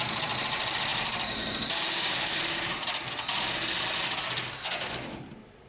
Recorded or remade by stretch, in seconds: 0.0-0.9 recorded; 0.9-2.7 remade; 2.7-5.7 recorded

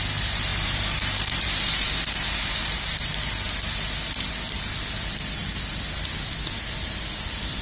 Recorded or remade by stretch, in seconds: 0.0-0.5 recorded; 0.5-1.9 remade; 1.9-7.6 recorded

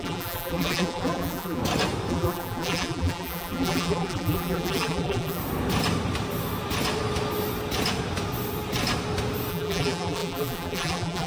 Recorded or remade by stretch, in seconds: 0.0-1.6 remade; 1.6-2.1 recorded; 2.1-5.4 remade; 5.4-9.5 recorded; 9.5-11.3 remade

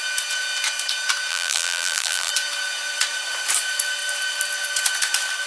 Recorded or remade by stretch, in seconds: 0.0-1.3 recorded; 1.3-2.3 remade; 2.3-5.5 recorded

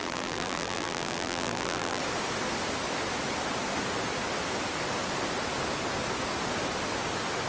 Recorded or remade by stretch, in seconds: 0.0-2.0 remade; 2.0-7.5 recorded

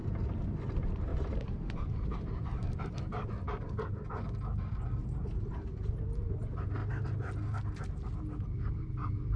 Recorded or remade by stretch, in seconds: 0.0-0.6 remade; 0.6-1.1 recorded; 1.1-3.6 remade; 3.6-5.0 recorded; 5.0-6.0 remade; 6.0-9.4 recorded

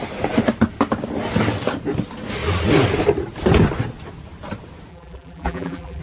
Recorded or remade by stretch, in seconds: 0.0-4.9 recorded; 4.9-6.0 remade

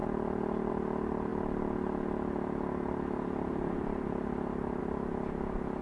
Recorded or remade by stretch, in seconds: 0.0-5.8 recorded